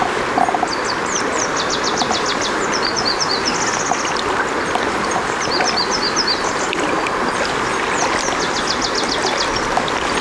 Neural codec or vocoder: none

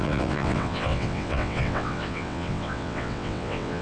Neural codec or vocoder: vocoder, WaveNeXt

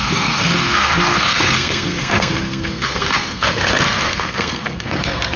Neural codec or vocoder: codec, SNAC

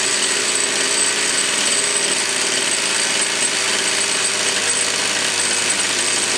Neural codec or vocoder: none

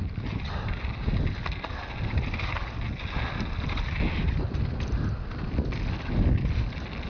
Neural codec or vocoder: none